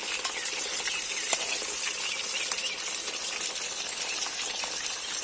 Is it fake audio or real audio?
real